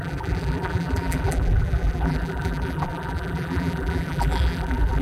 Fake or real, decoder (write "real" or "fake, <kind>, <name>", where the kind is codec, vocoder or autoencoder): fake, vocoder, BigVGAN v2